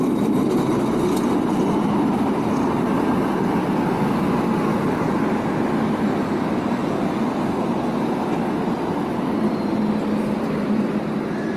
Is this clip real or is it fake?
real